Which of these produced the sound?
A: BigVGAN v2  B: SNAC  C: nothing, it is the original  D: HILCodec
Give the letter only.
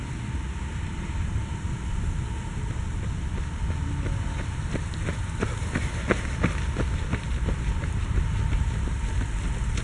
C